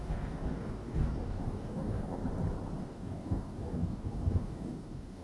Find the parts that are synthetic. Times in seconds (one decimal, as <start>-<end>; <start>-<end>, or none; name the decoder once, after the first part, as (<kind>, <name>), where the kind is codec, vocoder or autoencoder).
0.0-2.2 (codec, DAC); 2.8-5.2